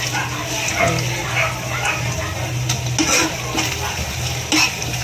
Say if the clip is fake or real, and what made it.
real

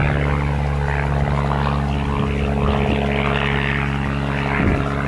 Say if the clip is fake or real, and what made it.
real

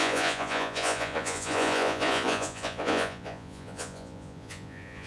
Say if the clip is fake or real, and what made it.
fake, vocoder, Vocos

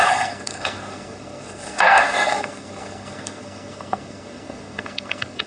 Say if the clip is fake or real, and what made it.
fake, codec, SNAC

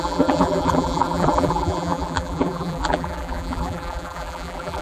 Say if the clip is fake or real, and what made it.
fake, vocoder, BigVGAN v2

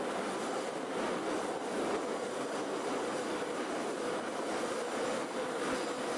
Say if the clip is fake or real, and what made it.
real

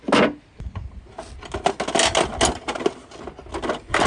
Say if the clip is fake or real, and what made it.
real